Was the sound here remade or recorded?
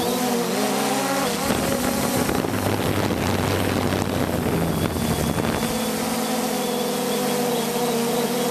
recorded